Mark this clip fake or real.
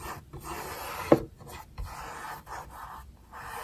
real